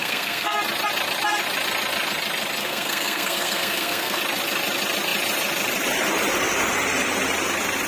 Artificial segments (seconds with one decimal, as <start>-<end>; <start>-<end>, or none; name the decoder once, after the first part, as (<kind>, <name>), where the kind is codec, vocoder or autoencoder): 0.0-0.6 (codec, SNAC); 2.6-4.2